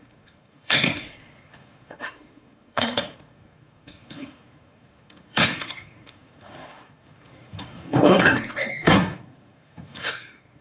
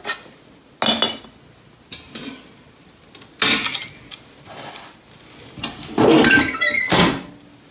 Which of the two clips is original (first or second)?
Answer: second